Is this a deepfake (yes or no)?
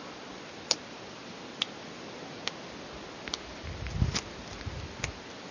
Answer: no